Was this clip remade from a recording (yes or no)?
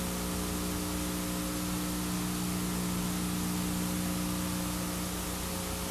no